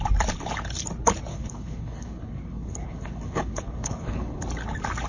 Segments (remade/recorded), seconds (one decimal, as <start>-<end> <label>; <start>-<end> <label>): 0.0-1.3 recorded; 1.3-4.4 remade; 4.4-5.1 recorded